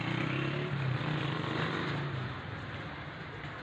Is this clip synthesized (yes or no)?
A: no